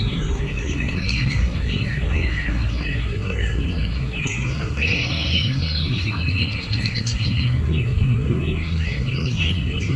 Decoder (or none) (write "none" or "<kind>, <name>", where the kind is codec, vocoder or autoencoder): codec, SNAC